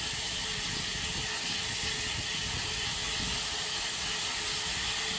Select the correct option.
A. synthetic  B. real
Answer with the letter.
B